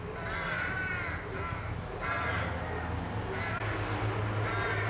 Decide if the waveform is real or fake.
real